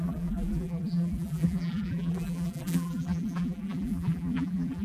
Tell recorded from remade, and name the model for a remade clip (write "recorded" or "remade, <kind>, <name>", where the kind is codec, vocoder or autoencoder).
remade, vocoder, BigVGAN v2